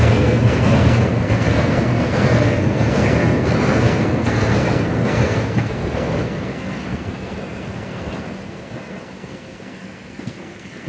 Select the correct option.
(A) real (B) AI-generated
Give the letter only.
B